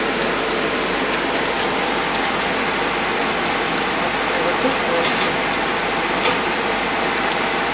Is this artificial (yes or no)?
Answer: no